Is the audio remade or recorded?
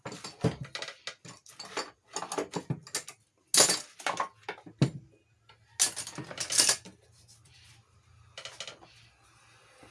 recorded